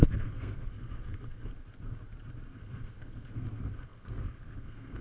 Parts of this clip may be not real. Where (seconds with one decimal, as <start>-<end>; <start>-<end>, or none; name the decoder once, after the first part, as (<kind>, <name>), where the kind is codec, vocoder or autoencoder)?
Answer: 0.0-1.5 (codec, SNAC); 2.5-5.0